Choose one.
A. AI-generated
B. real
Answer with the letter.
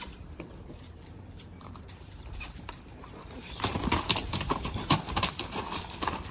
A